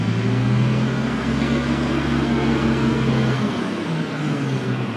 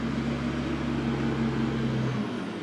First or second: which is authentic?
second